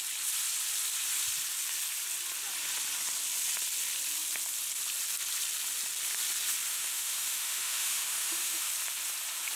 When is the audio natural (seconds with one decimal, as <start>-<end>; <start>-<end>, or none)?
0.0-6.7; 8.7-9.6